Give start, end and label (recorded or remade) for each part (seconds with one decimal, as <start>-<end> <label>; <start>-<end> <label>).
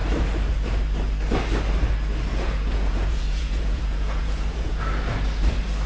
0.0-2.3 recorded; 2.3-4.8 remade; 4.8-5.9 recorded